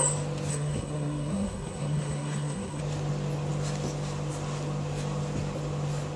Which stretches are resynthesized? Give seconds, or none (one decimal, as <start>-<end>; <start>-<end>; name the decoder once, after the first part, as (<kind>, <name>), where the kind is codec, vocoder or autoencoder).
0.5-2.8 (codec, SNAC)